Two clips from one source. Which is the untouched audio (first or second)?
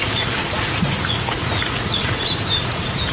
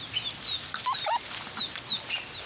second